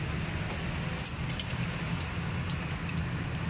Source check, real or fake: real